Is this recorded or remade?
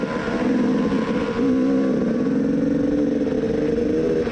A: recorded